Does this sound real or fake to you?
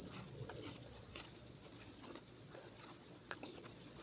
fake